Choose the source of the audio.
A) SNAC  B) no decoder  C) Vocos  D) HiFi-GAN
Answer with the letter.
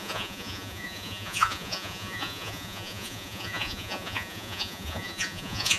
C